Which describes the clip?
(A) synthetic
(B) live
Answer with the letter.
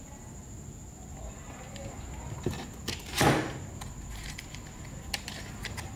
B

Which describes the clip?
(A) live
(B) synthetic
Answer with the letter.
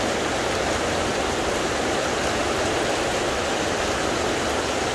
A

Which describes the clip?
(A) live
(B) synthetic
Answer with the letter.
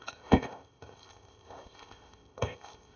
B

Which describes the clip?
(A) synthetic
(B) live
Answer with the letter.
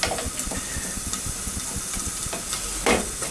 B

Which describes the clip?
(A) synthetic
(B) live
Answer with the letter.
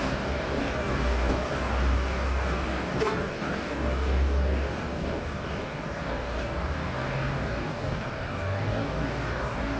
A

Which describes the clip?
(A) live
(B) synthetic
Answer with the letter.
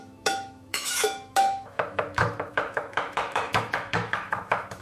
B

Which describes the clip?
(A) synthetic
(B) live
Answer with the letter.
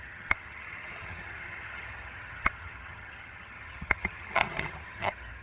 A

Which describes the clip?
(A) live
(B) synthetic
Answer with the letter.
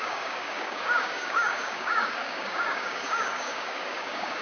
B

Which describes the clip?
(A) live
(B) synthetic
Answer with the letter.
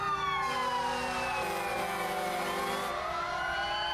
A